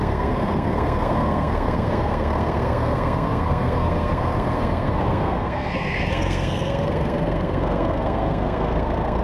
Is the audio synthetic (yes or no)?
yes